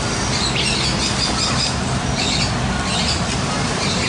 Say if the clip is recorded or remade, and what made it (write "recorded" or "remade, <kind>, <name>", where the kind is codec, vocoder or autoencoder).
recorded